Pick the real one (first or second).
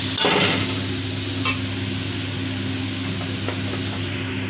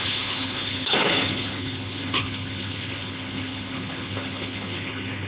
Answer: first